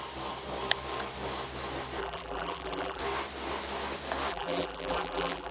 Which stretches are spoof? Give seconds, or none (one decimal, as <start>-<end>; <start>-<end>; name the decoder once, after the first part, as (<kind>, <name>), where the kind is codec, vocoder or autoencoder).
2.0-3.0 (vocoder, BigVGAN v2); 4.3-5.5

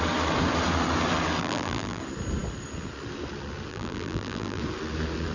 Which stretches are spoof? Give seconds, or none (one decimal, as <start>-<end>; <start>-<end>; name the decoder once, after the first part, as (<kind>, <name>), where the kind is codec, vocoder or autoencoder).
1.4-2.0 (vocoder, BigVGAN v2); 3.7-4.6

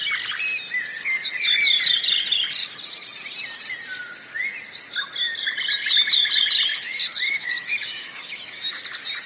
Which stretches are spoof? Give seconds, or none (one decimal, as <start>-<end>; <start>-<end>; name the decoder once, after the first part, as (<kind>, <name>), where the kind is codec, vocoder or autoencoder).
6.7-8.8 (autoencoder, DAC-VAE)

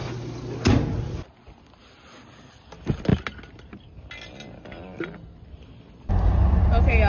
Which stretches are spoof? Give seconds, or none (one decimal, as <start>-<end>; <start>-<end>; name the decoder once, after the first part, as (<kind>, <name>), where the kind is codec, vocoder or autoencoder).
none